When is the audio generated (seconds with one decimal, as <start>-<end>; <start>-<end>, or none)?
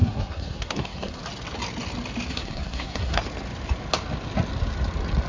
0.0-1.2; 2.3-3.2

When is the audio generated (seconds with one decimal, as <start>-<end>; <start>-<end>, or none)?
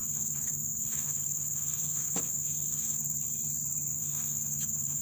0.0-3.0; 3.9-5.0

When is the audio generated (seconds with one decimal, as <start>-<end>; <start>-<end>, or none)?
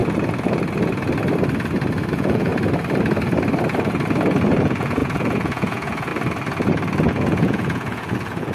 2.1-2.5; 4.6-6.1; 7.1-8.5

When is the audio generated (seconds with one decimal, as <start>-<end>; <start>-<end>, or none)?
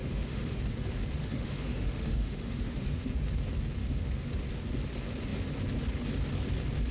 0.0-0.6; 1.2-3.1; 3.8-4.3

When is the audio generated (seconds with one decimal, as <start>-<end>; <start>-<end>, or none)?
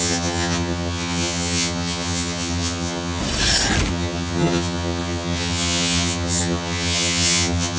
0.0-3.2; 3.9-7.8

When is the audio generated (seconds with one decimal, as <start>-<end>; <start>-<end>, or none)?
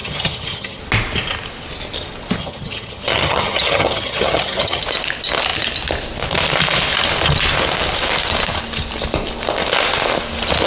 0.0-0.8; 2.4-4.8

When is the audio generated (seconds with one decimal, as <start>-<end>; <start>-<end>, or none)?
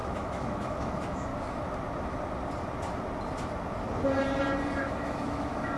0.0-1.3; 4.8-5.8